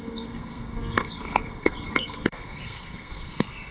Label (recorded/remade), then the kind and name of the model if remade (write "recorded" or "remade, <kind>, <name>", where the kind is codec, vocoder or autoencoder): remade, codec, SNAC